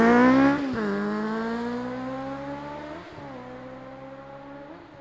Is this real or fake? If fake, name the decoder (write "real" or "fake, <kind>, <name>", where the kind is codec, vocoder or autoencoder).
real